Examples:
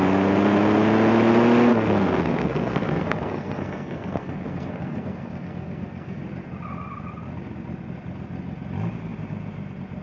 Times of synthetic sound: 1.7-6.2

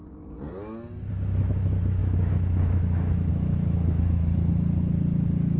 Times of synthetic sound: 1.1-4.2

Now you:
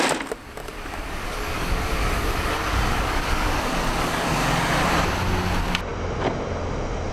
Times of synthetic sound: 0.6-4.9

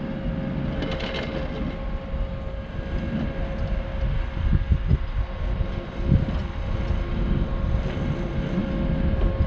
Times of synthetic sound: none